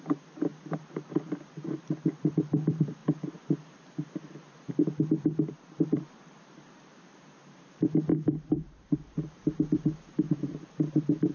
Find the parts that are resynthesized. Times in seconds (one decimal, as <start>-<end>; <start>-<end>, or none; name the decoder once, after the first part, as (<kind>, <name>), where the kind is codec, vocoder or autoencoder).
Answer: 0.0-3.0 (vocoder, BigVGAN v2); 4.7-11.3